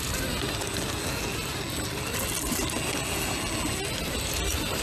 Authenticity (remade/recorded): recorded